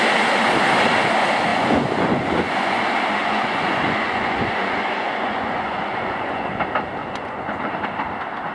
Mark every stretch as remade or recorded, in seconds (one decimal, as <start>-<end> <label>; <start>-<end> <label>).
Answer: 0.0-1.5 recorded; 1.5-2.8 remade; 2.8-3.2 recorded; 3.2-6.6 remade; 6.6-7.0 recorded; 7.0-7.7 remade; 7.7-8.5 recorded